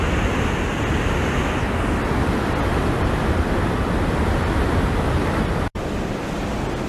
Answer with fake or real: real